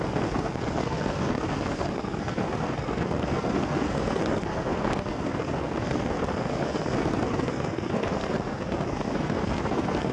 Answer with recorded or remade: remade